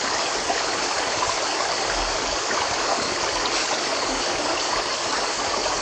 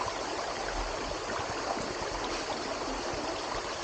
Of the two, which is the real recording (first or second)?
second